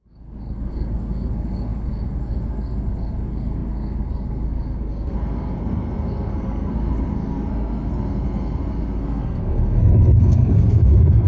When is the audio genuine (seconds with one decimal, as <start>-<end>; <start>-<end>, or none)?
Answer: none